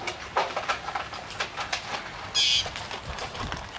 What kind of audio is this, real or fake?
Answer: real